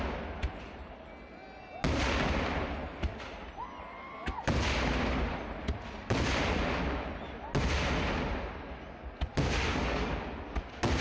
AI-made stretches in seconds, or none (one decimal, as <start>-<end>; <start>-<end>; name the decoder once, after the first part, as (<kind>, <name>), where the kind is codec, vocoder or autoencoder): 9.7-10.2 (codec, DAC)